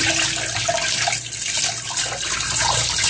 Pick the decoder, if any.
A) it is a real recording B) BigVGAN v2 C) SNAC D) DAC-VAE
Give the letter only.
A